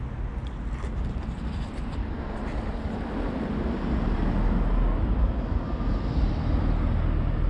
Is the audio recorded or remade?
recorded